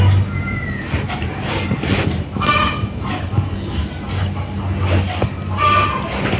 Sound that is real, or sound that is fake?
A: real